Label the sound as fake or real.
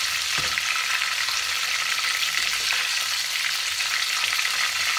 real